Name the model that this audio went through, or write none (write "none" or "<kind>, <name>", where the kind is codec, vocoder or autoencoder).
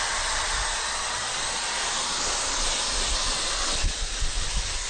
none